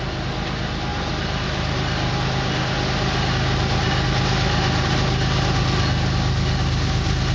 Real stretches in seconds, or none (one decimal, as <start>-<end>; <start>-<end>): 0.0-0.9; 2.1-7.3